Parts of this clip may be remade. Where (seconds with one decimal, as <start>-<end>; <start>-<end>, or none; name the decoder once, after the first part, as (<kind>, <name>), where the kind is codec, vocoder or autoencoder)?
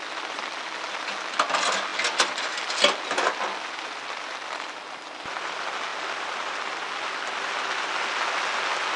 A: none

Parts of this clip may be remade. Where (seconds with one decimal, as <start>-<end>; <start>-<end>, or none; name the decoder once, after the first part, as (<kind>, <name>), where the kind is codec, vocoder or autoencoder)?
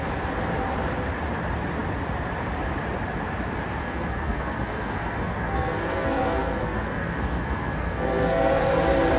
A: 3.8-8.7 (codec, SNAC)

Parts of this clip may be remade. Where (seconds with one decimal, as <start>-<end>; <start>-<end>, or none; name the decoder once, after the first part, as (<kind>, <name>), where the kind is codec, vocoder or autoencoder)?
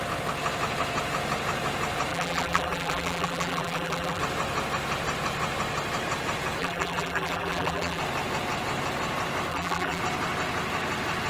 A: 2.1-4.2 (vocoder, BigVGAN v2); 6.6-8.0; 9.5-10.0